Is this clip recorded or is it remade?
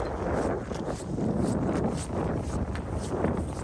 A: recorded